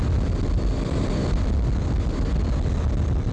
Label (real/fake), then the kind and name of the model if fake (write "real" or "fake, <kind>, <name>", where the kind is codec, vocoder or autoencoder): real